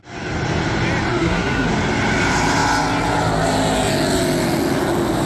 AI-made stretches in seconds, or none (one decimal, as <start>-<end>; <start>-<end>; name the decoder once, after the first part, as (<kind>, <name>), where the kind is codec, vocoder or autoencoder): 1.1-1.7 (codec, SNAC)